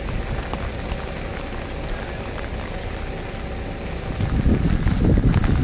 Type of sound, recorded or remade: recorded